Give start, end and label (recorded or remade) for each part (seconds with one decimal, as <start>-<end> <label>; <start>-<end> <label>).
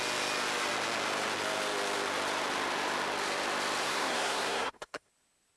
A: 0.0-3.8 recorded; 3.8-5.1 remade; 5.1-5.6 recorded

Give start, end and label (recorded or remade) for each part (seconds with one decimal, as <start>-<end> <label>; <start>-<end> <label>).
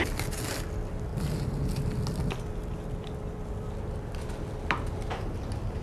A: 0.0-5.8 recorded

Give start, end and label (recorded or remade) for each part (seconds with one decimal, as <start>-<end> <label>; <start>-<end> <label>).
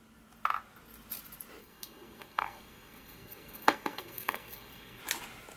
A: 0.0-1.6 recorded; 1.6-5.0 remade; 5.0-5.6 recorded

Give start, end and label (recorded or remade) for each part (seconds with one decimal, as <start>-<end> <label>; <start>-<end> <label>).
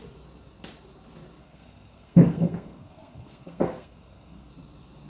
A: 0.0-1.4 recorded; 1.4-4.5 remade; 4.5-5.1 recorded